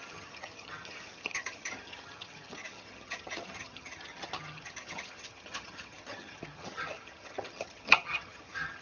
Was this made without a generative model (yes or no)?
no